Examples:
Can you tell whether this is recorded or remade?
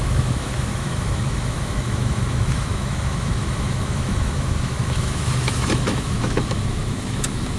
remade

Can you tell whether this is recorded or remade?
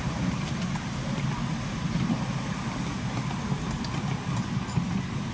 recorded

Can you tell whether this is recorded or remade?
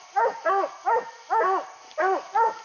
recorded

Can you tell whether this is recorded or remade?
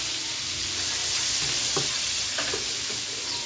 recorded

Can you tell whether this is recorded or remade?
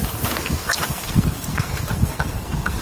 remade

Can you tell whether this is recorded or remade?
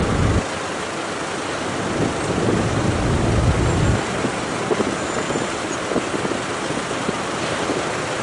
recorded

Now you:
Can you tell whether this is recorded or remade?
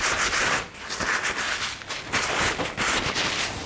recorded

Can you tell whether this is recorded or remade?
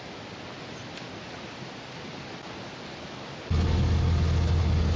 recorded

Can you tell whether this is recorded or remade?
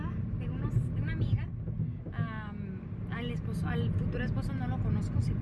recorded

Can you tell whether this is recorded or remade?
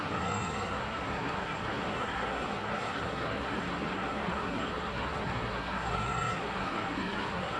remade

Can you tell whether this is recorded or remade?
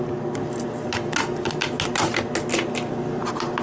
recorded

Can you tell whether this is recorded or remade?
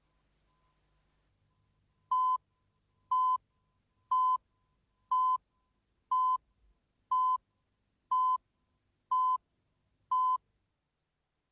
recorded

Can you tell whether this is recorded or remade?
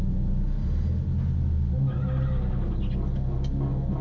recorded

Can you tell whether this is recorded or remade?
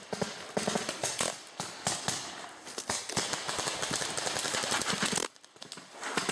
recorded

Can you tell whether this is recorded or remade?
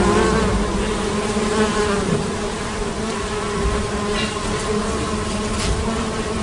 recorded